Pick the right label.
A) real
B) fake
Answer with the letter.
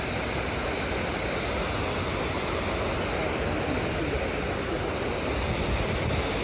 A